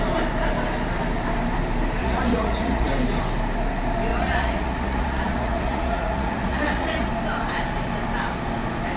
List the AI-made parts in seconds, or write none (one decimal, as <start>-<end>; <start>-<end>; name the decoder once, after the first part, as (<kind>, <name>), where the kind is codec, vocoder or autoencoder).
2.0-2.9 (vocoder, Vocos); 4.1-7.1